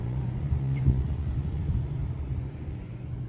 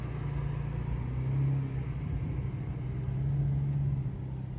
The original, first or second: second